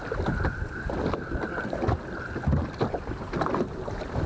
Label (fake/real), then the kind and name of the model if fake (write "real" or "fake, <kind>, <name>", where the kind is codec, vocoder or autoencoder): real